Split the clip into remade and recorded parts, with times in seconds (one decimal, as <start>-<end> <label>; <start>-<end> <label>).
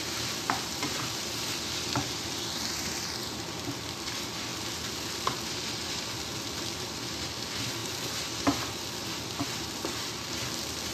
0.0-4.5 remade; 4.5-5.5 recorded; 5.5-10.9 remade